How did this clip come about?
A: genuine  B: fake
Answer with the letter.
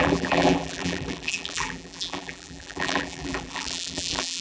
B